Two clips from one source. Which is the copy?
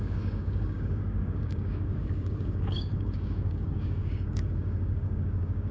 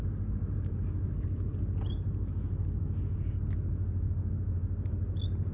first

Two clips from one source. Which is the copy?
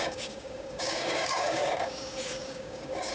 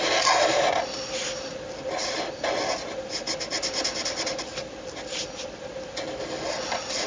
first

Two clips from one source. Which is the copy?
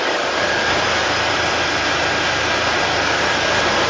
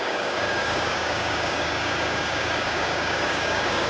second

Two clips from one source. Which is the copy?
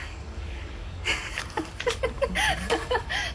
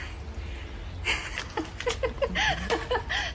first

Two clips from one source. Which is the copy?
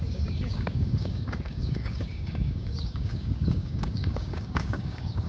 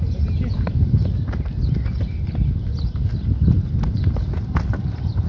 first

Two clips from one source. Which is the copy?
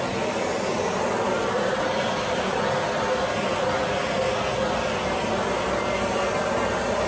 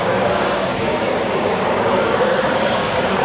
second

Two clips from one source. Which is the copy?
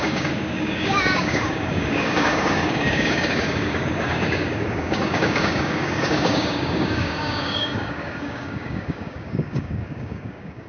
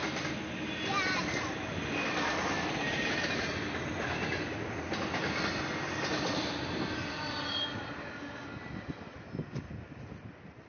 first